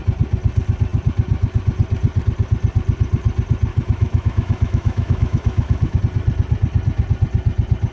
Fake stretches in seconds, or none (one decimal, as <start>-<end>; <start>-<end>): 3.7-6.0